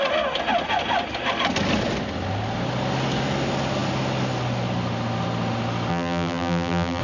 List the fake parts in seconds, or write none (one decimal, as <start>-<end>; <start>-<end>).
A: 5.9-7.0